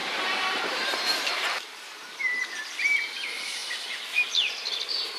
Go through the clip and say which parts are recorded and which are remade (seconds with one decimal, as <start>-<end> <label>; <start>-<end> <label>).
0.0-5.2 recorded